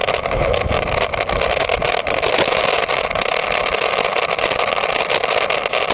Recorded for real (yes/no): yes